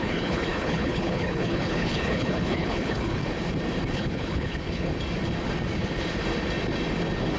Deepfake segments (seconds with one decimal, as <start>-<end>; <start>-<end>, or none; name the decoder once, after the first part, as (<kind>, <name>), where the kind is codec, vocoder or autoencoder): 0.0-3.2 (codec, HILCodec); 3.9-4.9